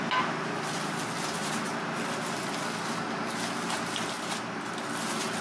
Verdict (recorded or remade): recorded